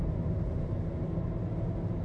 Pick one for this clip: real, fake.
real